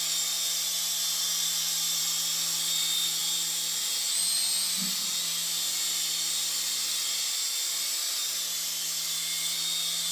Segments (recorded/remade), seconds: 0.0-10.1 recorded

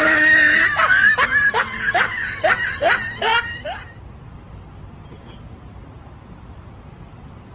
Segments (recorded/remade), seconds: 0.0-7.5 recorded

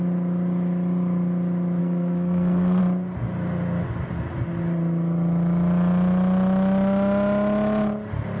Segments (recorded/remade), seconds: 0.0-1.8 recorded; 1.8-2.8 remade; 2.8-8.4 recorded

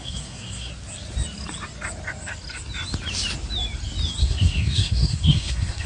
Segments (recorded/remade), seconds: 0.0-0.7 remade; 0.7-4.2 recorded; 4.2-5.9 remade

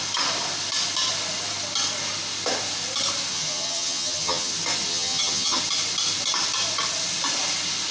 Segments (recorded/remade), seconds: 0.0-3.3 recorded; 3.3-4.5 remade; 4.5-4.9 recorded; 4.9-5.6 remade; 5.6-7.9 recorded